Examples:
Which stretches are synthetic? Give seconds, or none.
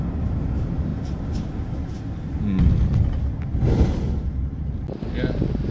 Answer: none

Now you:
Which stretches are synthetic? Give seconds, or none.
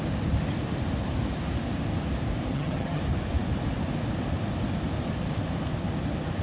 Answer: 2.5-3.0 (vocoder, HiFi-GAN)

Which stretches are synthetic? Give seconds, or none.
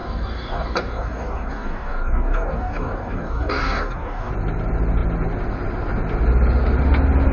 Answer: 0.0-4.3 (codec, DAC)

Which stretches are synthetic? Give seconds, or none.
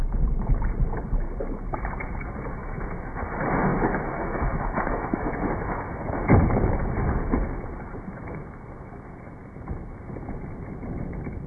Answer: 2.6-3.3 (autoencoder, DAC-VAE); 3.7-6.3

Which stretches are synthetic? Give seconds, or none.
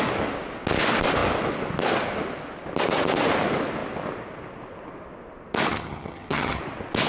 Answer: 5.7-6.6 (vocoder, HiFi-GAN)